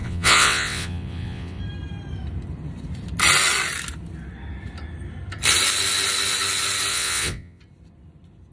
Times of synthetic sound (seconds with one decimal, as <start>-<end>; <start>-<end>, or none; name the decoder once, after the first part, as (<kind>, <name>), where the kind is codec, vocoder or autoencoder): 0.0-1.6 (vocoder, WaveNeXt); 6.9-7.6